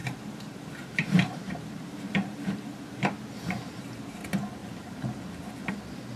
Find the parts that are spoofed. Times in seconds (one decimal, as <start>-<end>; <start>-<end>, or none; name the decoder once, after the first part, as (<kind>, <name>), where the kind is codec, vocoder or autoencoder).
0.0-3.7 (vocoder, BigVGAN v2)